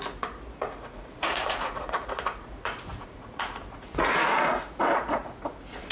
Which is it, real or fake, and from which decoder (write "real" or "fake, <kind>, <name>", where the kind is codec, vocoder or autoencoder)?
fake, vocoder, Vocos